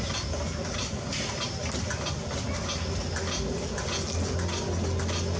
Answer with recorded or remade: recorded